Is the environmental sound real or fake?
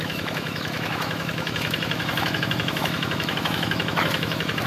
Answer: fake